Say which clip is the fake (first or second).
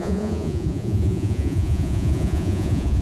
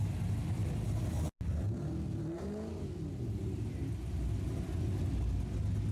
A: first